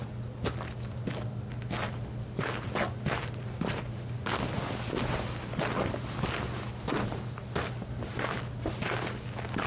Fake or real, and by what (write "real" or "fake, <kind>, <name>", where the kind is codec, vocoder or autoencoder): real